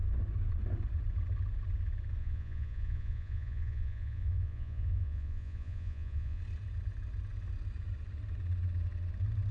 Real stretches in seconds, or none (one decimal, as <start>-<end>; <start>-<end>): 0.0-2.2; 6.4-9.5